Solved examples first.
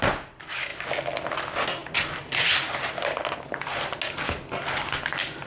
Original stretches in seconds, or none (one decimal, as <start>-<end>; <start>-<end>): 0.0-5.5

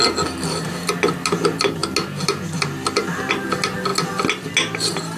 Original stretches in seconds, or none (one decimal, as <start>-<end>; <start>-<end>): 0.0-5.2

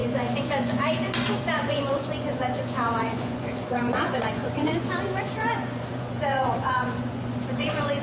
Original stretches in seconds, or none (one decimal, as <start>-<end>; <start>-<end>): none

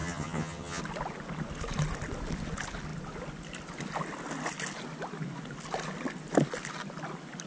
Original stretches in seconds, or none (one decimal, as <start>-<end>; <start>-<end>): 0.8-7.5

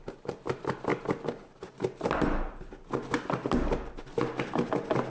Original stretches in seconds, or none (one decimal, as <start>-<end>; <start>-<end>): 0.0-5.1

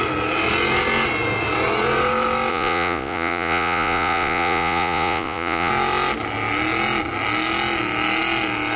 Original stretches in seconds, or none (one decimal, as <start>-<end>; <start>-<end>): 0.0-2.5; 5.7-8.8

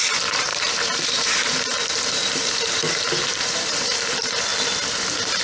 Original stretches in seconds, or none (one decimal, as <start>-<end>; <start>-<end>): 4.5-5.4

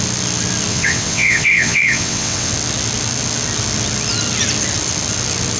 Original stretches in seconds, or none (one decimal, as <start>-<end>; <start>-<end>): 0.0-0.7; 2.5-5.6